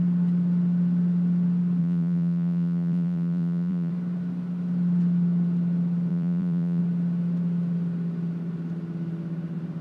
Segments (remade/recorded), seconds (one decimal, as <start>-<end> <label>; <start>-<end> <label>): 0.0-1.8 recorded; 1.8-3.9 remade; 3.9-6.1 recorded; 6.1-6.8 remade; 6.8-9.8 recorded